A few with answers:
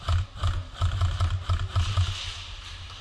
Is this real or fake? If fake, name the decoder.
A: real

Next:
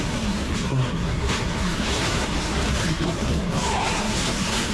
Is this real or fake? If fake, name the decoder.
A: fake, codec, SNAC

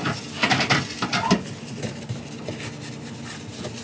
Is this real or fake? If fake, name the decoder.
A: real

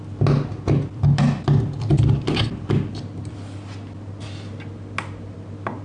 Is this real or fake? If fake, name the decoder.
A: real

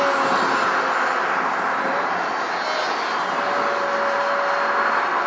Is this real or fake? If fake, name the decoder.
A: real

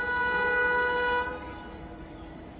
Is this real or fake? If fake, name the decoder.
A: real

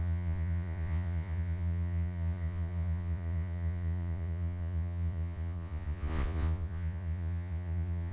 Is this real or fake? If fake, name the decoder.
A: fake, vocoder, Vocos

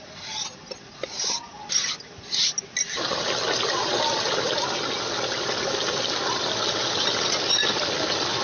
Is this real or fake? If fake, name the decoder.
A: real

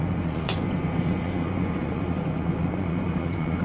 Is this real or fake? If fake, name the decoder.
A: fake, vocoder, Vocos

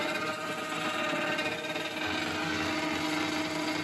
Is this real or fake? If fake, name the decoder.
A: real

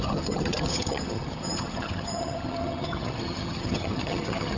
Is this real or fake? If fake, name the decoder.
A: fake, vocoder, HiFi-GAN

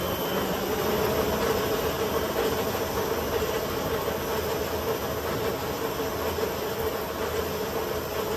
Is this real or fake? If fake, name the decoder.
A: real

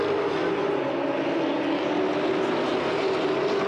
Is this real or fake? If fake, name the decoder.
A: real